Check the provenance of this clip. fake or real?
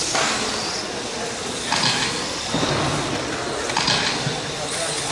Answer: real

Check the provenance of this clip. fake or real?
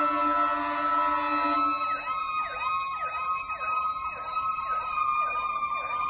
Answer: real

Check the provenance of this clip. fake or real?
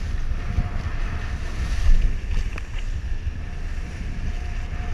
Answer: real